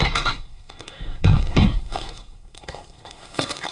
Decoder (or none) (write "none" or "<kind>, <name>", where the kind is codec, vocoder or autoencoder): codec, SNAC